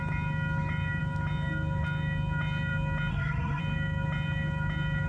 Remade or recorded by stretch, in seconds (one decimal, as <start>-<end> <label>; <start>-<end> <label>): 0.0-3.1 recorded; 3.1-3.6 remade; 3.6-5.1 recorded